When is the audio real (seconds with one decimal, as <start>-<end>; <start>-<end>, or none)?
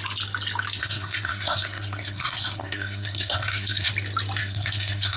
0.0-0.8; 3.9-4.4